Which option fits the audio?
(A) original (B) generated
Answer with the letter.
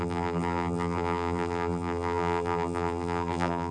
B